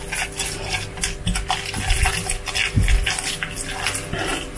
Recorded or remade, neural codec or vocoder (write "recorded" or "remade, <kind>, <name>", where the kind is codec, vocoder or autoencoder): recorded